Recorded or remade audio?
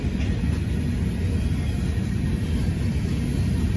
recorded